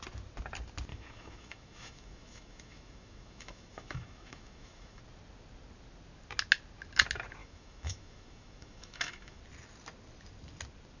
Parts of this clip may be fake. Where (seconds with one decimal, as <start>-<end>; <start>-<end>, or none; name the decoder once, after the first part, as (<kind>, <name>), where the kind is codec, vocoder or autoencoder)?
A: 0.9-5.0 (autoencoder, DAC-VAE); 7.4-9.4